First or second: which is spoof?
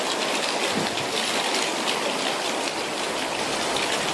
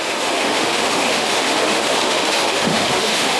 second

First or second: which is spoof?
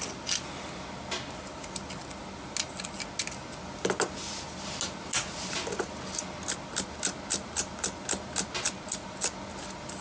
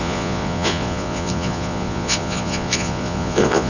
second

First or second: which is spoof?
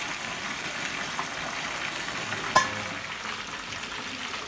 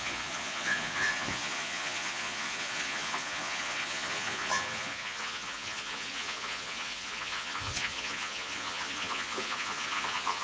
second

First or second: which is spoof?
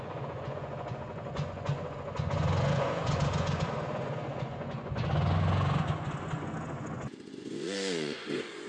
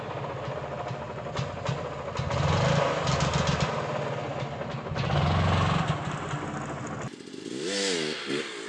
first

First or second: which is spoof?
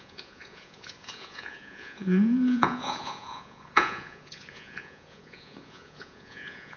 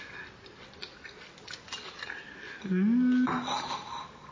first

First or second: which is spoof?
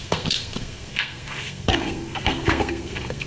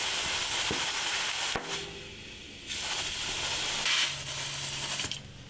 first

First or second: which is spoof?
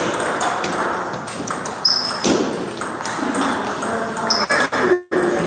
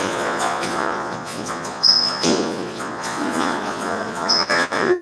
second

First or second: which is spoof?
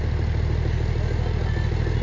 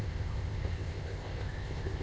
second